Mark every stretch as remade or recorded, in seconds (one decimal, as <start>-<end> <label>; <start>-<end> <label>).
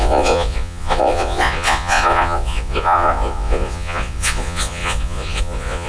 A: 0.0-5.9 remade